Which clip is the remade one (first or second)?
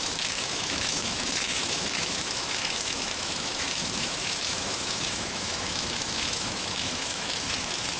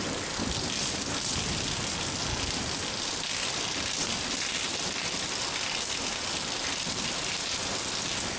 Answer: first